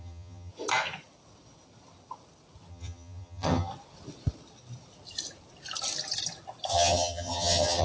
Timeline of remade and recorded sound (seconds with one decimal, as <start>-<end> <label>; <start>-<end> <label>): 0.0-0.5 remade; 0.5-2.7 recorded; 2.7-3.7 remade; 3.7-6.7 recorded; 6.7-7.8 remade

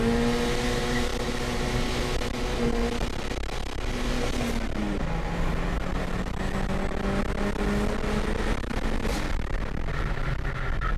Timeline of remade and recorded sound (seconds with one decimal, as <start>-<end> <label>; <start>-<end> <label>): 0.0-11.0 recorded